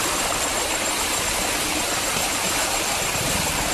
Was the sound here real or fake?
fake